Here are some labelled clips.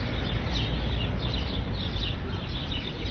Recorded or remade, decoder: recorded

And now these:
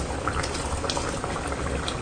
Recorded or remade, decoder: recorded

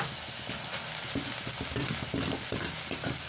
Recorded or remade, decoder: recorded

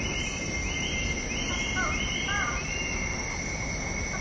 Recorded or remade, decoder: recorded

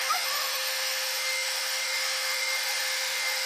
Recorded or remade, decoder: remade, autoencoder, DAC-VAE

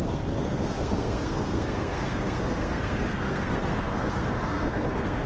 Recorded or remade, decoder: remade, codec, SNAC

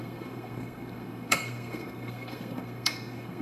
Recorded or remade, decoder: remade, codec, SNAC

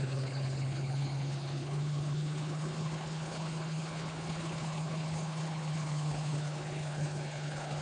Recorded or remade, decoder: remade, codec, HILCodec